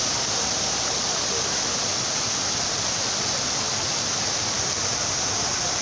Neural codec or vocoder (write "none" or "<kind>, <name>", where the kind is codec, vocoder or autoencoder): none